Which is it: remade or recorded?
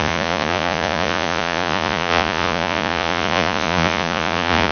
remade